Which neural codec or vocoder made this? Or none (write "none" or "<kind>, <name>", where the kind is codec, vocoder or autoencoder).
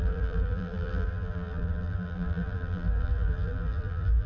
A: vocoder, BigVGAN v2